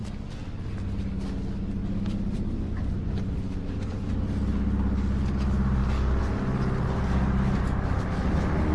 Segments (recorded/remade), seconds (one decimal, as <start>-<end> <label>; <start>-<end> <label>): 0.0-1.8 recorded; 1.8-4.1 remade; 4.1-5.8 recorded; 5.8-7.6 remade; 7.6-8.7 recorded